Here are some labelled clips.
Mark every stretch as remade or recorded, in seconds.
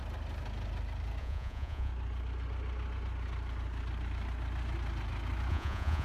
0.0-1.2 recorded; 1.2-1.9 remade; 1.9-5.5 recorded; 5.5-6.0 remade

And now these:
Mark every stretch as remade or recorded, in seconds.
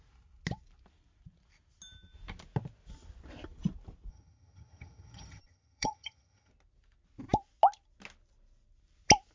0.0-4.1 recorded; 4.1-6.5 remade; 6.5-9.3 recorded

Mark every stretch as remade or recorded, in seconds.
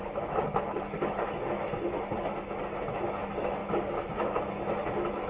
0.0-5.3 remade